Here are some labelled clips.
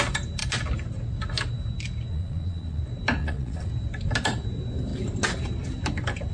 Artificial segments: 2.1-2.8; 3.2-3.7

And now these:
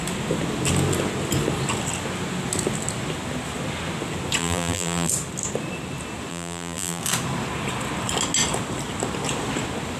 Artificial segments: 4.4-5.1; 6.3-7.0

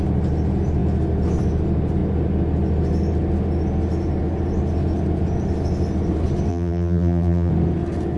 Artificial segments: 6.5-7.5

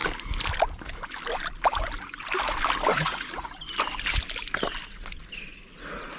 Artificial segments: 2.9-3.5